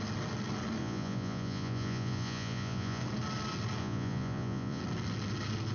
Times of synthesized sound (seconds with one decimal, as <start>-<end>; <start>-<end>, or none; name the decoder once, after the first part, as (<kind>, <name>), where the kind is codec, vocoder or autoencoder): 0.8-3.0 (vocoder, Vocos); 3.8-4.8